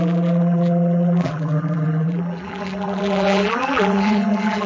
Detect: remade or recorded remade